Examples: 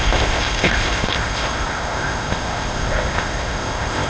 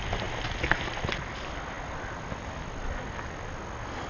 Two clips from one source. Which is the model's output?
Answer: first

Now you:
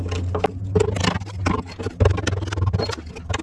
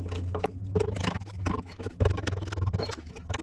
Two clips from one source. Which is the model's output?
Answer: second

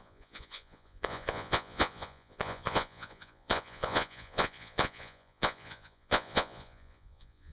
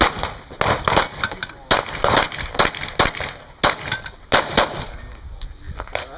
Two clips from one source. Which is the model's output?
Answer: first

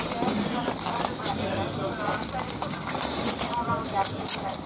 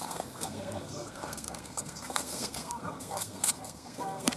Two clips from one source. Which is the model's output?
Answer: second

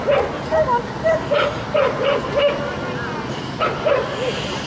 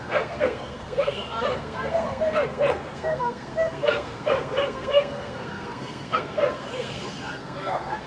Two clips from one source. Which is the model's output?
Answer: second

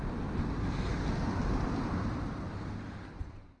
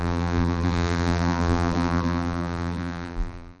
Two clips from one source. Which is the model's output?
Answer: second